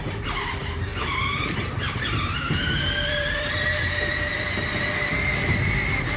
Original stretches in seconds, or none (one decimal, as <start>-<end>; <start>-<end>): none